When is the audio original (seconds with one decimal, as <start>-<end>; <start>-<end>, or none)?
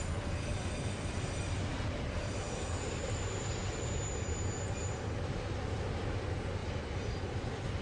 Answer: 0.0-1.7; 2.4-7.8